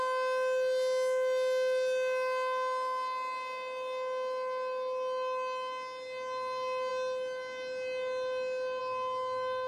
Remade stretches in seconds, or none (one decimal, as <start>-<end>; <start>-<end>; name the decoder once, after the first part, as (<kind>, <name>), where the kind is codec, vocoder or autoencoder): none